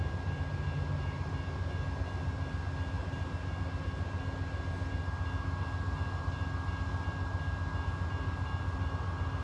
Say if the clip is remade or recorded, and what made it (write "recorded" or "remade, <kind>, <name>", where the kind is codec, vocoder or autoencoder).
recorded